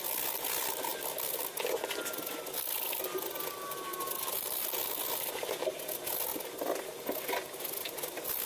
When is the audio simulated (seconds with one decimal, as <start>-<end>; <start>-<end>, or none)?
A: none